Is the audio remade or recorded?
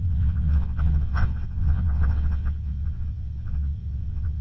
remade